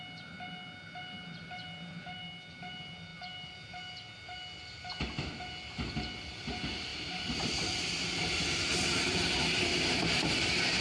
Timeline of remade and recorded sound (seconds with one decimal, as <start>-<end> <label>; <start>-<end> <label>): 0.0-6.9 recorded; 6.9-7.8 remade; 7.8-10.8 recorded